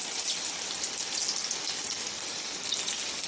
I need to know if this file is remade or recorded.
recorded